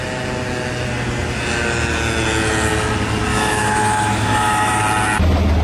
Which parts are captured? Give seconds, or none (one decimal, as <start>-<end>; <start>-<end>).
0.0-3.3; 4.8-5.6